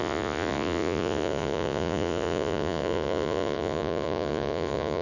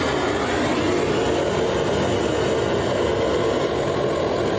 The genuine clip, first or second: second